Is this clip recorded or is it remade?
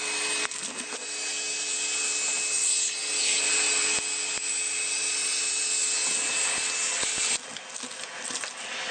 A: recorded